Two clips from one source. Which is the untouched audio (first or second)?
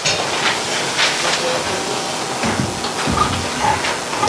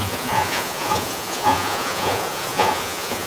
first